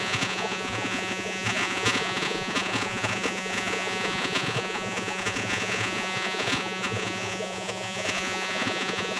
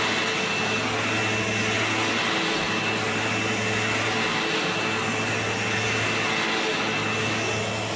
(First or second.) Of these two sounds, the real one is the second